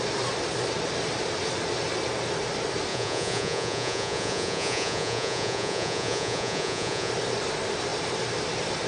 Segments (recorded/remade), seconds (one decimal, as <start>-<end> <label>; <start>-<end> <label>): 0.0-2.9 recorded; 2.9-7.1 remade; 7.1-8.9 recorded